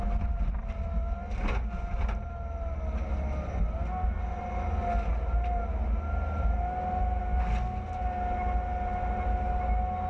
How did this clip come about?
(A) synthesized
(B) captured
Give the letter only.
B